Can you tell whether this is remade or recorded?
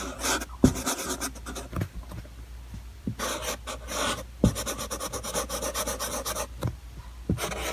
recorded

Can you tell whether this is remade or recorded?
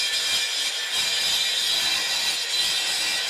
recorded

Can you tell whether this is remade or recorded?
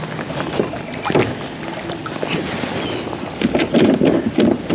recorded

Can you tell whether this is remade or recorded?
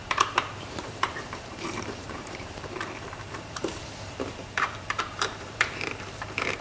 remade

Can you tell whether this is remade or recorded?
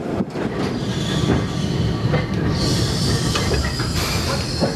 recorded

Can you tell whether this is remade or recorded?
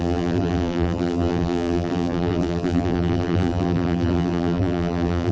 remade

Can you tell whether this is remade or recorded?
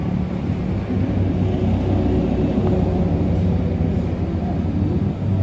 recorded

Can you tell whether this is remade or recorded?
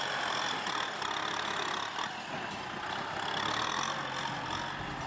recorded